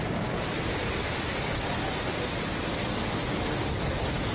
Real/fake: real